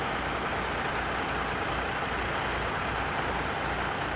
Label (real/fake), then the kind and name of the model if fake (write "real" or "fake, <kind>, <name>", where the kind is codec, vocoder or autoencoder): real